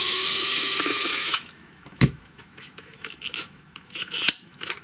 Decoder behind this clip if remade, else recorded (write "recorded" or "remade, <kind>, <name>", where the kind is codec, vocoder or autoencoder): remade, autoencoder, DAC-VAE